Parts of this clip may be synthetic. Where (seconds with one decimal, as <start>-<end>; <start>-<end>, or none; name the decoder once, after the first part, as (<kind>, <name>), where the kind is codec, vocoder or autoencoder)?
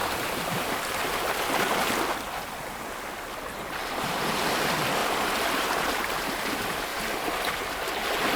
0.0-1.1 (vocoder, BigVGAN v2); 3.8-4.5; 5.0-6.0; 6.9-7.8